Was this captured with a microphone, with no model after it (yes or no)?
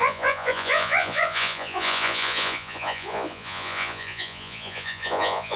no